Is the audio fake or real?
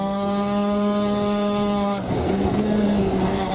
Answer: fake